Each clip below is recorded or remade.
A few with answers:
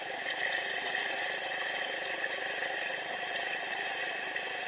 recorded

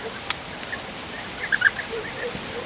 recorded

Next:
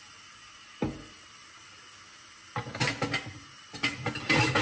recorded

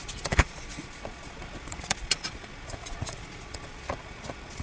remade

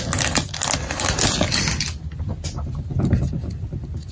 recorded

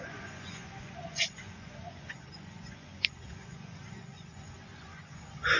remade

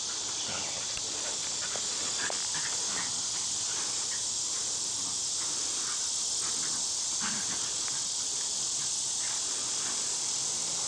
recorded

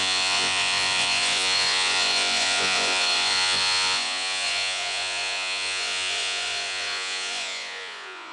remade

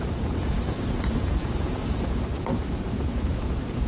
remade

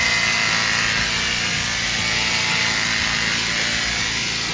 recorded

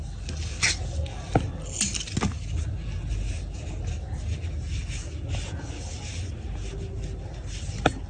recorded